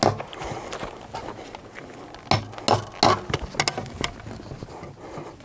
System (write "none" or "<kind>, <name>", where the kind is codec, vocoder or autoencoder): none